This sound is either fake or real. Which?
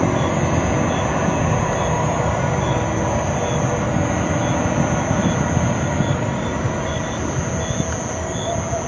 real